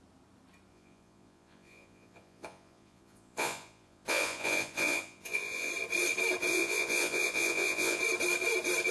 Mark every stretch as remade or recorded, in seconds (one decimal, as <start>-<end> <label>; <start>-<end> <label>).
0.0-0.7 recorded; 0.7-5.7 remade; 5.7-6.5 recorded; 6.5-8.0 remade; 8.0-8.9 recorded